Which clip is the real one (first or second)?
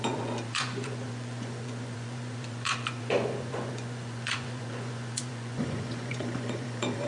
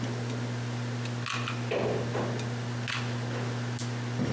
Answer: second